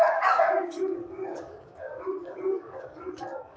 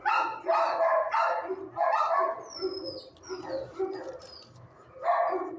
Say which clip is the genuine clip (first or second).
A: second